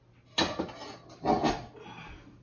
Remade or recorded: recorded